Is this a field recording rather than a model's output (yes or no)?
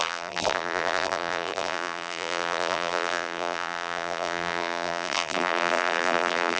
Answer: no